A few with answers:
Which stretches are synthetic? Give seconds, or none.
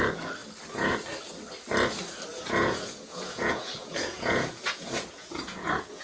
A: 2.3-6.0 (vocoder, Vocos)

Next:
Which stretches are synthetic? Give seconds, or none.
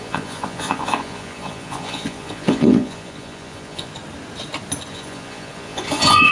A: 0.0-3.9 (vocoder, Vocos); 4.9-6.3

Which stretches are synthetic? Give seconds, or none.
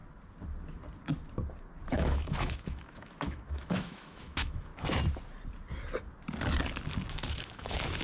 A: 1.9-4.7 (autoencoder, DAC-VAE); 7.1-8.0